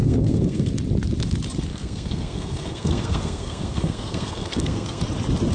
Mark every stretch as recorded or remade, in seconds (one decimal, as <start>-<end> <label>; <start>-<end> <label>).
0.0-0.7 remade; 0.7-1.7 recorded; 1.7-5.0 remade; 5.0-5.5 recorded